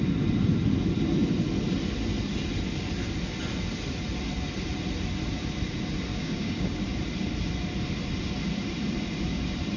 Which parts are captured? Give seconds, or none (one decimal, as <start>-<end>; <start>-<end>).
0.0-6.1; 6.8-9.8